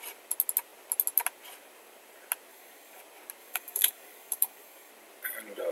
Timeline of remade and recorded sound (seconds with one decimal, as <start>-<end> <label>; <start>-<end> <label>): 0.0-2.5 recorded; 2.5-3.0 remade; 3.0-3.4 recorded; 3.4-4.9 remade; 4.9-5.7 recorded